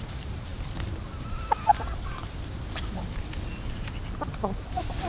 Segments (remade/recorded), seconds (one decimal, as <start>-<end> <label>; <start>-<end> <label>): 0.0-5.1 recorded